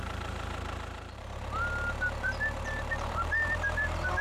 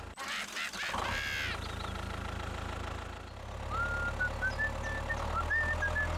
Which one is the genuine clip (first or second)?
second